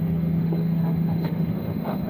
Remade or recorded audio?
remade